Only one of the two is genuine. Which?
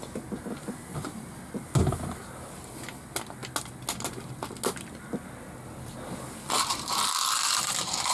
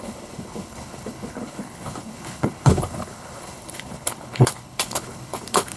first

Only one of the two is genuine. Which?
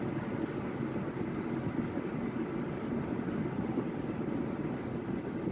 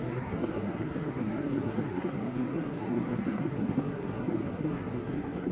first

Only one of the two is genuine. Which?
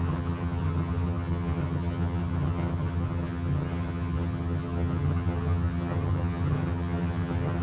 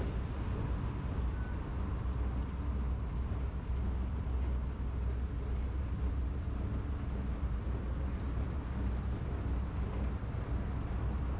second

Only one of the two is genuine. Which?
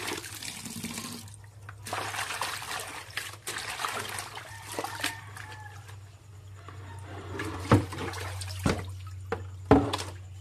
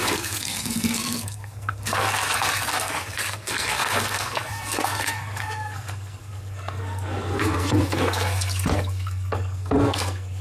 first